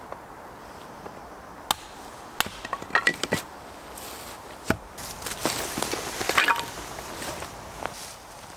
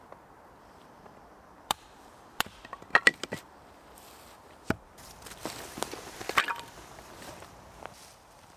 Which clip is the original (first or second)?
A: first